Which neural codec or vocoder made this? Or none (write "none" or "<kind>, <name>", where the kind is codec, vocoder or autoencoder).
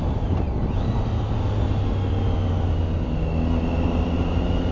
none